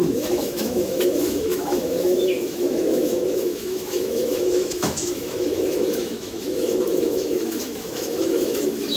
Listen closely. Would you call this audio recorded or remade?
remade